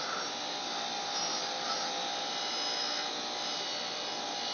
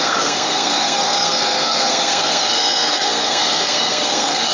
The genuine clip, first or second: first